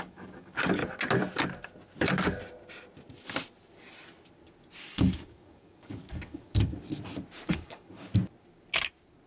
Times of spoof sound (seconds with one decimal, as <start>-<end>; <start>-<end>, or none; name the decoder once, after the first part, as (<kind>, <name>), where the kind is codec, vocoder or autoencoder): 0.0-0.8 (codec, DAC); 4.8-6.7; 7.5-8.1